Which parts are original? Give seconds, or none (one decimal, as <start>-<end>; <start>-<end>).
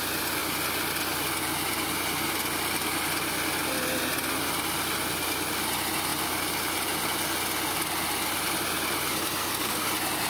0.0-9.4; 9.9-10.3